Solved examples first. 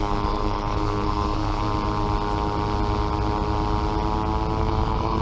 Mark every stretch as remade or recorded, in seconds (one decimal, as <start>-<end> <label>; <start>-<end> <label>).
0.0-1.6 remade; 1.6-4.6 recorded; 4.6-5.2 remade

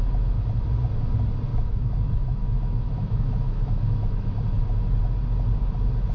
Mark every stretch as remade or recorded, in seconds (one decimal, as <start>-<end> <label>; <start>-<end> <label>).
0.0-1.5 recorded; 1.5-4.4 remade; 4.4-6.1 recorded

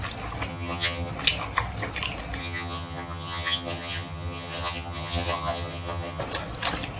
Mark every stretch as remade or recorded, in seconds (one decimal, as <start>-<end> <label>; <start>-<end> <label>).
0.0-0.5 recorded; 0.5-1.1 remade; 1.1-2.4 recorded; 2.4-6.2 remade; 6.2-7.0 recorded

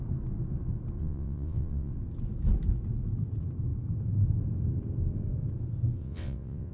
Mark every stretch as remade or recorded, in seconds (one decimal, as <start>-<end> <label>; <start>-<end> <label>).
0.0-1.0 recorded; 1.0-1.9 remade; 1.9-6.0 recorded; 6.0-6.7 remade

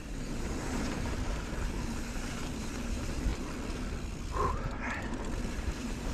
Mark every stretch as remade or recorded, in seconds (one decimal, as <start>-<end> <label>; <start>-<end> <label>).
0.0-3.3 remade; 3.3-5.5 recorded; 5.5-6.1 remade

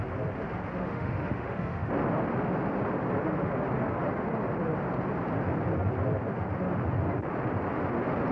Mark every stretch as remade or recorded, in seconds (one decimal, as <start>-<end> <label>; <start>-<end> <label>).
0.0-0.8 recorded; 0.8-1.9 remade; 1.9-8.3 recorded

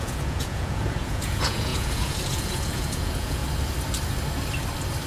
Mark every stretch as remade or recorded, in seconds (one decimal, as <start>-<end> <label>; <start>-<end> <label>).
0.0-3.4 remade; 3.4-5.1 recorded

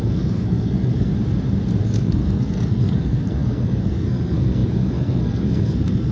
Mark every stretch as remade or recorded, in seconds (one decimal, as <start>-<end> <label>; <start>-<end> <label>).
0.0-1.1 remade; 1.1-1.8 recorded; 1.8-6.1 remade